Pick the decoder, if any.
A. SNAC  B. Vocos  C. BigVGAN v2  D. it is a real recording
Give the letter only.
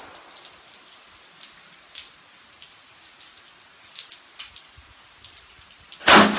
D